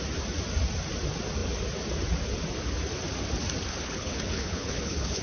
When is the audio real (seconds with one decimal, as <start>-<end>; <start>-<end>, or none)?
0.0-3.7

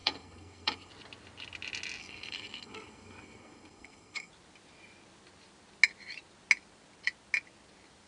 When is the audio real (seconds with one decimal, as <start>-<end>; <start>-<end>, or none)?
0.9-2.0; 4.3-8.1

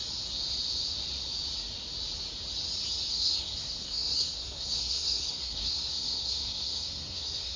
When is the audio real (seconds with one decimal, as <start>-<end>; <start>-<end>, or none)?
0.0-3.1

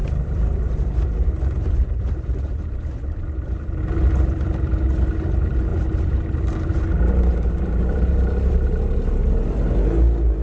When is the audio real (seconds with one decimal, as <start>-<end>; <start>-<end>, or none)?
3.8-10.4

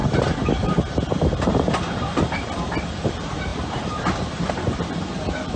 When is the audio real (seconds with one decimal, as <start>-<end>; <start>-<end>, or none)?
3.5-4.5

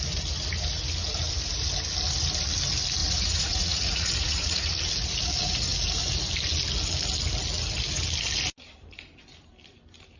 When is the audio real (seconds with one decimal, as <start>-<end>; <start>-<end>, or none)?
0.0-3.0; 4.7-10.2

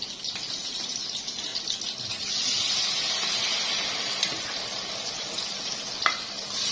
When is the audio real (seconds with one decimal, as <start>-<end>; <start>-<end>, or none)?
0.0-6.7

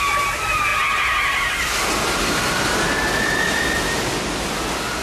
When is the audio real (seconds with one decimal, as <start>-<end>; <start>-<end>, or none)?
0.0-5.0